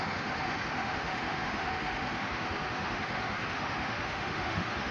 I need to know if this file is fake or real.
fake